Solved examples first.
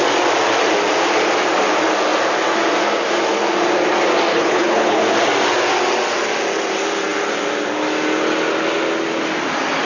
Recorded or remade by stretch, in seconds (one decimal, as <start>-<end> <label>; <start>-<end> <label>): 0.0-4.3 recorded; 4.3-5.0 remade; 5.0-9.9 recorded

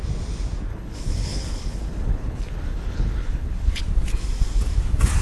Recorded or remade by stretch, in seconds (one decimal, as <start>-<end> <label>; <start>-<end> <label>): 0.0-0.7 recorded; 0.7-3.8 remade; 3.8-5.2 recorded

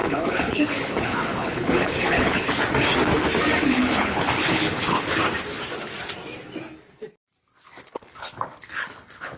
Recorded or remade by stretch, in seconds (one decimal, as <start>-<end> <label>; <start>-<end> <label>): 0.0-2.6 remade; 2.6-3.6 recorded; 3.6-5.2 remade; 5.2-7.8 recorded; 7.8-9.4 remade

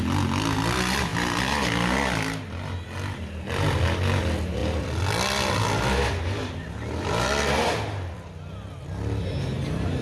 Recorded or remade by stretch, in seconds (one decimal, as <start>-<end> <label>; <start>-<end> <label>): 0.0-10.0 recorded

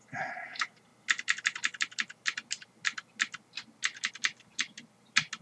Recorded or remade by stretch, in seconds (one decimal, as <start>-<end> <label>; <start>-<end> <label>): 0.0-5.4 recorded

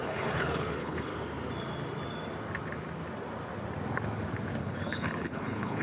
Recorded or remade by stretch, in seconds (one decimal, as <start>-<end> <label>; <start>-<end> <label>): 0.0-1.1 remade; 1.1-4.6 recorded; 4.6-5.8 remade